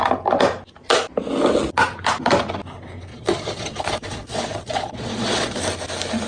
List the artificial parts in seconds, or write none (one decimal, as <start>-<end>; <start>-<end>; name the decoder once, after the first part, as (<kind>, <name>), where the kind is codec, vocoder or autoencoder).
3.1-5.6 (vocoder, Vocos)